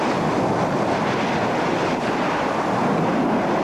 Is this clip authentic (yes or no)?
yes